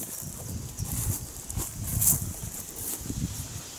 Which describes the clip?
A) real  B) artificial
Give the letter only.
A